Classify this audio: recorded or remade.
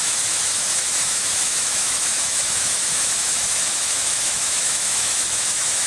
remade